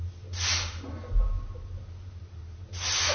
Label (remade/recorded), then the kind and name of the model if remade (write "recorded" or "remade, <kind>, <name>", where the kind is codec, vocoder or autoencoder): recorded